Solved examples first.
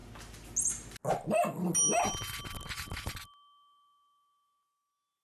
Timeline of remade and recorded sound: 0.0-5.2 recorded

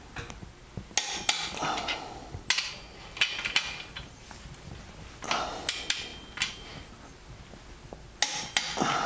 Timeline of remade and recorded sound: 0.0-9.1 recorded

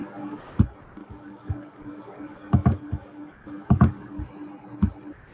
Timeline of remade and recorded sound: 0.0-0.6 remade; 0.6-1.0 recorded; 1.0-4.2 remade; 4.2-5.3 recorded

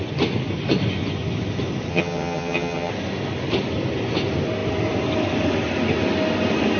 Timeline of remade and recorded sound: 0.0-1.9 recorded; 1.9-2.9 remade; 2.9-6.8 recorded

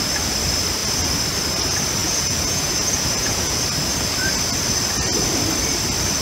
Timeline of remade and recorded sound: 0.0-2.0 recorded; 2.0-3.6 remade; 3.6-6.2 recorded

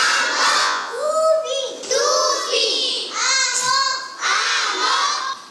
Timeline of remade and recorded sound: 0.0-0.6 recorded; 0.6-1.1 remade; 1.1-5.5 recorded

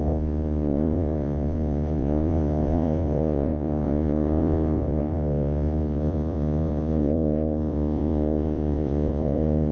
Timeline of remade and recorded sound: 0.0-9.7 remade

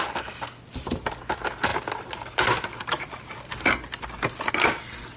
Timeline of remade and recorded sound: 0.0-5.2 recorded